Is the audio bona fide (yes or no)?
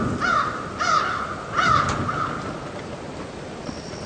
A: yes